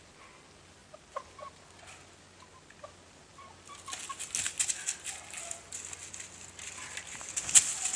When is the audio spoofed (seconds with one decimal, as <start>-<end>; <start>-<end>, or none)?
none

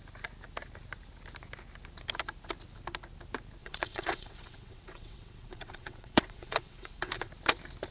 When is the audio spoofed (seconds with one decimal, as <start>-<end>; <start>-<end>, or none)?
3.6-7.3

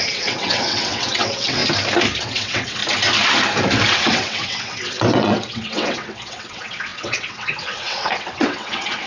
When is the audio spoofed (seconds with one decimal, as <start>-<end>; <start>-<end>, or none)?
0.0-1.6; 2.2-2.8; 3.9-9.1